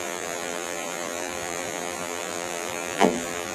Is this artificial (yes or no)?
yes